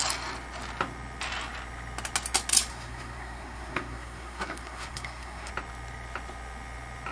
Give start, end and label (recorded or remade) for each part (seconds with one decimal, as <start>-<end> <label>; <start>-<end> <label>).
0.0-2.7 recorded; 2.7-5.5 remade; 5.5-7.1 recorded